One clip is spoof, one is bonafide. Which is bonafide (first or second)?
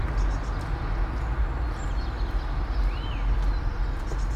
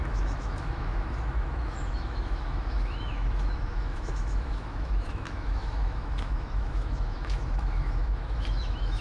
first